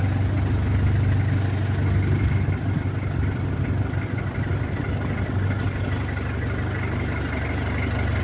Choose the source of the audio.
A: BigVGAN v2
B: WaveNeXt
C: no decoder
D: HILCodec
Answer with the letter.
C